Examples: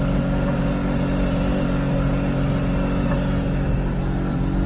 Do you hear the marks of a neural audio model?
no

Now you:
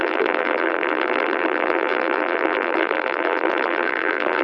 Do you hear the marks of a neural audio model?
yes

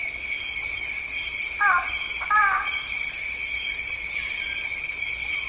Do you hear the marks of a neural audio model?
no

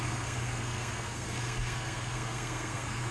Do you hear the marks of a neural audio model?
yes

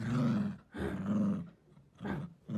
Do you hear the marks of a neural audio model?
no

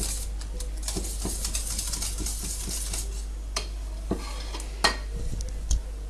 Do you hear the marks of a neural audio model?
no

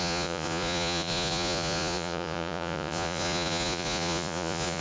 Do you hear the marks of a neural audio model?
yes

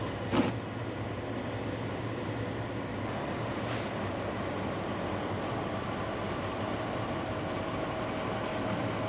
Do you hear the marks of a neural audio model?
no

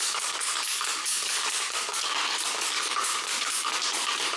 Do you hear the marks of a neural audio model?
yes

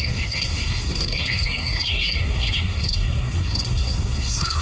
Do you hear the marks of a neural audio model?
yes